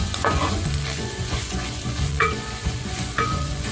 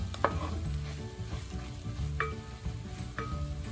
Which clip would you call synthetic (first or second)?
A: first